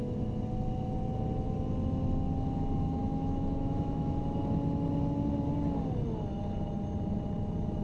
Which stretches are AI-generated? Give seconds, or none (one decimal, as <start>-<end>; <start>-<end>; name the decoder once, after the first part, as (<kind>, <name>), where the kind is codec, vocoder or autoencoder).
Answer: 3.0-4.2 (autoencoder, DAC-VAE)